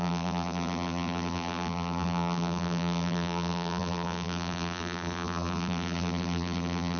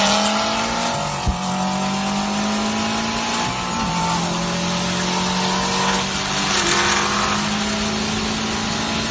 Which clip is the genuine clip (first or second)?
second